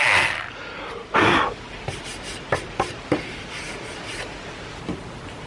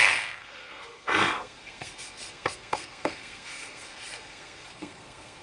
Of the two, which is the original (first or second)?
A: first